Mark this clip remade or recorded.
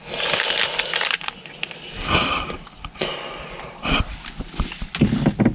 recorded